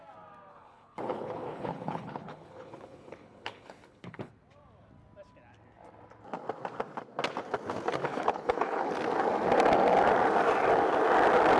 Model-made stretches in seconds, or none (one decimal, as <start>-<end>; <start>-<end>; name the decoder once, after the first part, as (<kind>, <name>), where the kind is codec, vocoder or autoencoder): 0.5-4.3 (codec, HILCodec); 8.0-8.9